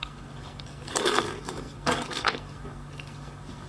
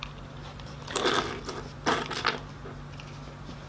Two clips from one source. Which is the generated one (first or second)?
first